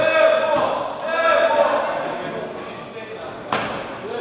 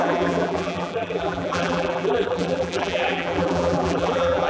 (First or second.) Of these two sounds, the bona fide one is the first